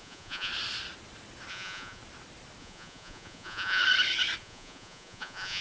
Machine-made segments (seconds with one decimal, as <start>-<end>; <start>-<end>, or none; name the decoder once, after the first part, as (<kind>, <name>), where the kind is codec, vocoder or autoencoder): 0.0-0.5 (vocoder, Vocos); 1.5-2.0; 2.6-3.8; 4.4-5.6